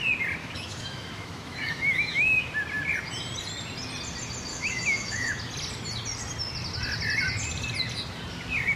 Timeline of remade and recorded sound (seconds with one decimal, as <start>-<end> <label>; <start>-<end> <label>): 0.0-0.4 recorded; 0.4-2.5 remade; 2.5-4.5 recorded; 4.5-5.3 remade; 5.3-8.8 recorded